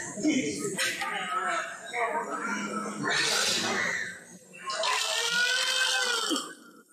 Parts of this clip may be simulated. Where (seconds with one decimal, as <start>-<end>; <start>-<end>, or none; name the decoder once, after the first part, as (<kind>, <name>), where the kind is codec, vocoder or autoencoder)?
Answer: 0.0-0.7 (vocoder, BigVGAN v2); 4.8-5.9